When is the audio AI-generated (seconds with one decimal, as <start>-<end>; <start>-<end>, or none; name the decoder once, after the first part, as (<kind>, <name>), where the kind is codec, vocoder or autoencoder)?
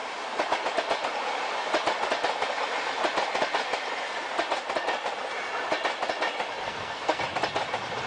6.6-7.2 (codec, SNAC)